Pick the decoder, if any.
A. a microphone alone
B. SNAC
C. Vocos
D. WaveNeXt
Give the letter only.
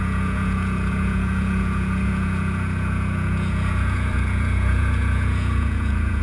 C